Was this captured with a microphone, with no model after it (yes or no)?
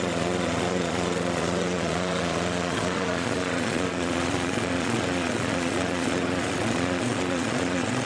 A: no